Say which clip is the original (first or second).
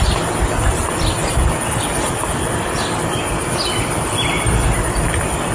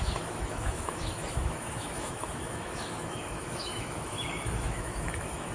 first